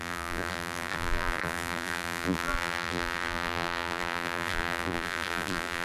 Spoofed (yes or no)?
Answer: yes